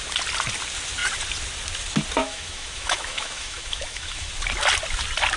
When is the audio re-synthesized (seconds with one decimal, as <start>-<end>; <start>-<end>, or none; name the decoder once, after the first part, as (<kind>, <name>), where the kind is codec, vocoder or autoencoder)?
2.2-4.3 (autoencoder, DAC-VAE)